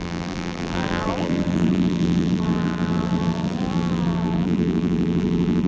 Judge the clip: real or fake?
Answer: fake